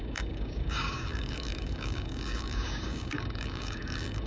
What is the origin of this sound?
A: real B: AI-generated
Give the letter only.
B